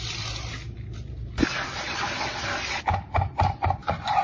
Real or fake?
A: real